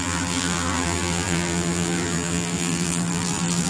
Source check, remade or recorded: remade